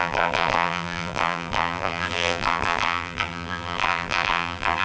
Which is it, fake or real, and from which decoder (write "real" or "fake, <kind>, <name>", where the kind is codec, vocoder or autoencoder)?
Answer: fake, vocoder, BigVGAN v2